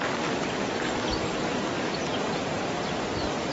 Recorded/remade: recorded